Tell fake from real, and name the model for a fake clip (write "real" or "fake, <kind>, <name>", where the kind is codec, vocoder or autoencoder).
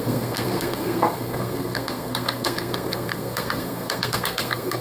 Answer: fake, codec, SNAC